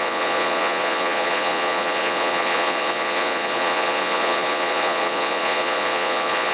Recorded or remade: remade